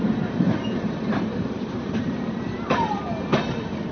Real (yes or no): no